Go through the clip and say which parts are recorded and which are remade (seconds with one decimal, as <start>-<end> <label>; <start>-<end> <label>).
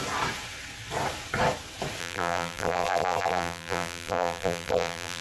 0.0-2.0 recorded; 2.0-5.2 remade